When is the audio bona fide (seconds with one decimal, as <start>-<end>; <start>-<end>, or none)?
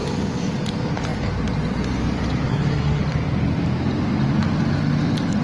0.0-2.5; 3.0-5.4